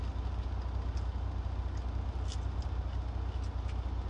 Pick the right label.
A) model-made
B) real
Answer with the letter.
B